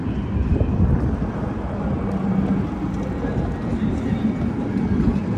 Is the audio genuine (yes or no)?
yes